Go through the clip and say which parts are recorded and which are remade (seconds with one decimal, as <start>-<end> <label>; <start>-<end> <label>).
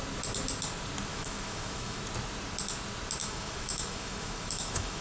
0.0-1.1 recorded; 1.1-2.0 remade; 2.0-3.2 recorded; 3.2-5.0 remade